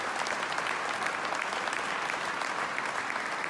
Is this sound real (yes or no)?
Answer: yes